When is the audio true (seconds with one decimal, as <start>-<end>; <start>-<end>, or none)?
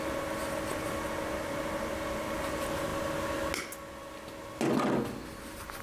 0.0-5.8